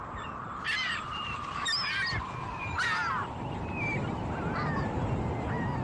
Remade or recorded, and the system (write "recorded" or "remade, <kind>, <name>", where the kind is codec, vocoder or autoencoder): recorded